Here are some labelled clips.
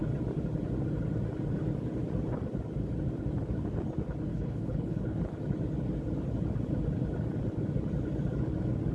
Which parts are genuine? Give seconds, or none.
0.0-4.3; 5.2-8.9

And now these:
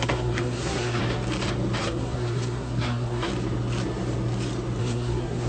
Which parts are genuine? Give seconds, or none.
1.0-1.8; 3.3-4.8

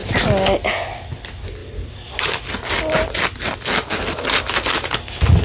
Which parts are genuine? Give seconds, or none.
0.0-5.4

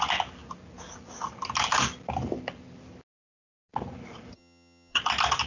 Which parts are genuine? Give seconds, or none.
0.0-4.3; 5.0-5.5